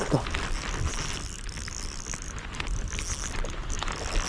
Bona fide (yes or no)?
yes